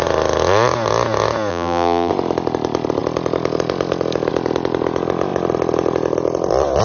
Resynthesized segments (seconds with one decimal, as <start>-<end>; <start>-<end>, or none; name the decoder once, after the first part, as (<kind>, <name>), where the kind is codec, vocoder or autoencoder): 1.5-2.1 (vocoder, BigVGAN v2)